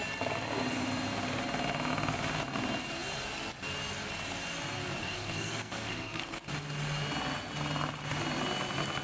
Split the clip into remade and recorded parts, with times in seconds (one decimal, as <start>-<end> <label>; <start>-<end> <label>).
0.0-5.0 recorded; 5.0-6.2 remade; 6.2-9.0 recorded